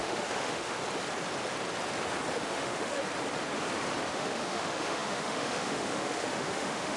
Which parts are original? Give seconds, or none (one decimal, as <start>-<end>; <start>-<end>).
0.8-2.3; 3.0-4.1